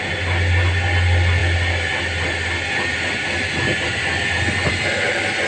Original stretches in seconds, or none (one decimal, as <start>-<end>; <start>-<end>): 0.0-5.5